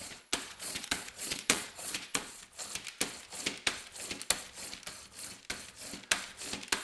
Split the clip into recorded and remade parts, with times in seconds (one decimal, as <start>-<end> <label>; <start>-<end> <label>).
0.0-2.4 remade; 2.4-6.8 recorded